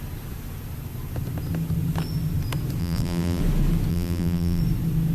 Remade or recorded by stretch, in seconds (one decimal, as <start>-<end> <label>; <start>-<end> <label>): 0.0-2.8 recorded; 2.8-3.4 remade; 3.4-3.9 recorded; 3.9-4.6 remade; 4.6-5.1 recorded